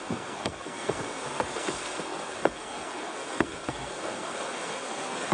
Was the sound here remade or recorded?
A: remade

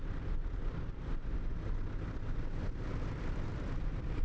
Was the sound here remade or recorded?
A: recorded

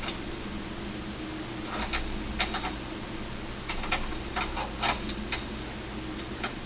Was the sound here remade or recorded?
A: recorded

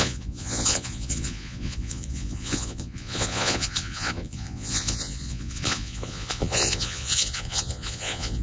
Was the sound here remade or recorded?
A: remade